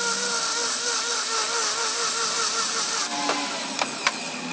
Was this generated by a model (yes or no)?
no